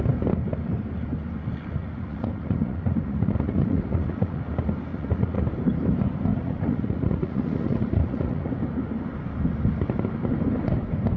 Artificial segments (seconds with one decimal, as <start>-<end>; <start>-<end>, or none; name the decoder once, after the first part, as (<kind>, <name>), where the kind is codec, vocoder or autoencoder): 1.8-4.4 (vocoder, Vocos); 4.9-5.4; 6.3-8.5